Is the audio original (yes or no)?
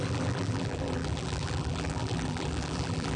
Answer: no